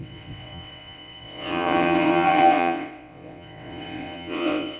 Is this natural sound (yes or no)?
no